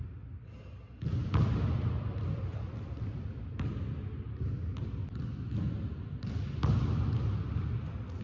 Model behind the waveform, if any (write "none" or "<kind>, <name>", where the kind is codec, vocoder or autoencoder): none